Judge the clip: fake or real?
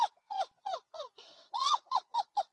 fake